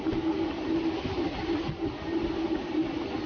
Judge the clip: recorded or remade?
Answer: recorded